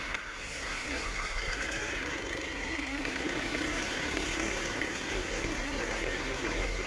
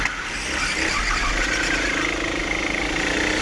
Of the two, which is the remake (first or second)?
first